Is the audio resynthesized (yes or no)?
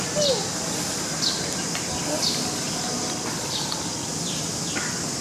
no